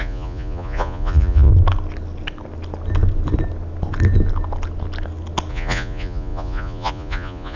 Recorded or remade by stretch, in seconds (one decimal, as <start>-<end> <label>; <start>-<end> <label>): 0.0-1.5 remade; 1.5-5.5 recorded; 5.5-7.6 remade

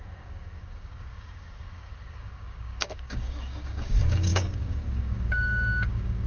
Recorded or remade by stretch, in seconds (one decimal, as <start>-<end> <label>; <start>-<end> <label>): 0.0-6.3 remade

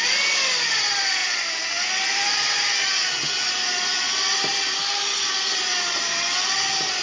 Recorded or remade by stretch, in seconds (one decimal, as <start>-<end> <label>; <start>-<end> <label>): 0.0-7.0 recorded

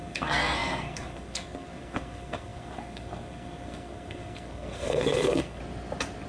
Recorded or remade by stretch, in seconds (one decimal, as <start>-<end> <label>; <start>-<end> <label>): 0.0-5.6 remade; 5.6-6.3 recorded

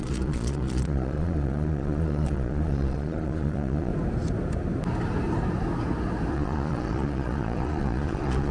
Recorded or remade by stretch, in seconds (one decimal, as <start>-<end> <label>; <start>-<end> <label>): 0.0-3.9 remade; 3.9-6.3 recorded; 6.3-8.5 remade

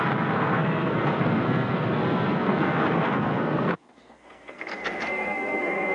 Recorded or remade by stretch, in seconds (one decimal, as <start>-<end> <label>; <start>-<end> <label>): 0.0-5.9 remade

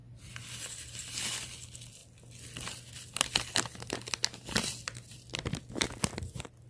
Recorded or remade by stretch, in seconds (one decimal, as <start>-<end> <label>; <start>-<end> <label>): 0.0-6.7 recorded